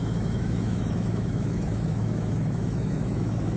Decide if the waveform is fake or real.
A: fake